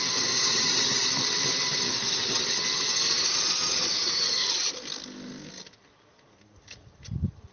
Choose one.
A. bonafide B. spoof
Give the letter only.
A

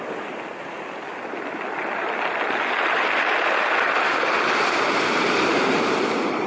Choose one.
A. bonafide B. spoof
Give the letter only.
A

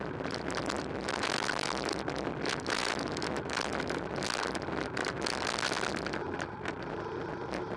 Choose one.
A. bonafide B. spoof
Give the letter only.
A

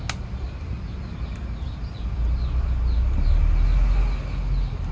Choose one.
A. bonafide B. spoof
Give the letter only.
A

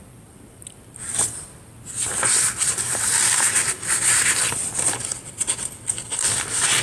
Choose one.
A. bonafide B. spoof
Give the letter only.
A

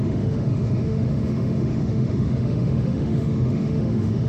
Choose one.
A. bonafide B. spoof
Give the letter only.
B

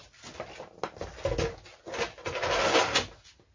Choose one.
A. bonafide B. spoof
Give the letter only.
A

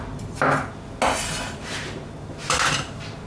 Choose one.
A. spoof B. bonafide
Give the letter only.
B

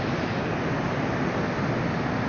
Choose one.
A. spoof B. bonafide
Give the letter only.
B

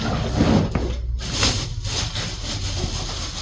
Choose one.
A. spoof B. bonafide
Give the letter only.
B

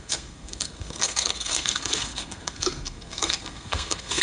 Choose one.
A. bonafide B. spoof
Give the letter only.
B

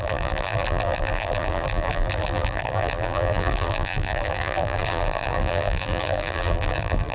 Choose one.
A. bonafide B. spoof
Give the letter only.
B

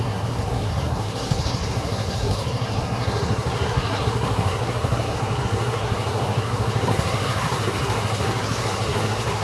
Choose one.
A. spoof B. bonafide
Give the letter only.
A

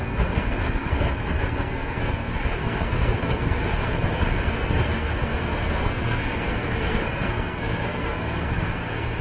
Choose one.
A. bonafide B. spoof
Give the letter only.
B